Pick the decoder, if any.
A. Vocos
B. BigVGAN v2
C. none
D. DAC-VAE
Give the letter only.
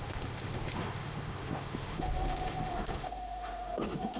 D